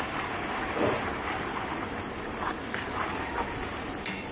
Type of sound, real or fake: real